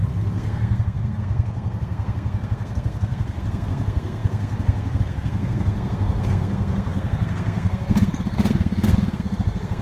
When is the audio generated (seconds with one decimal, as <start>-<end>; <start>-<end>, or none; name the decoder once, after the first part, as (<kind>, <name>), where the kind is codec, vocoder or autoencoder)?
0.0-9.8 (codec, SNAC)